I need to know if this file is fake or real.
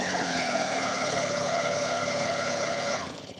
fake